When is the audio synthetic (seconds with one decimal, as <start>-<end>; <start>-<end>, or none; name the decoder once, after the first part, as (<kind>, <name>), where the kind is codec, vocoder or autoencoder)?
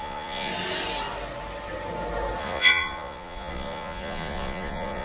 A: 0.0-0.5 (vocoder, Vocos); 2.4-5.0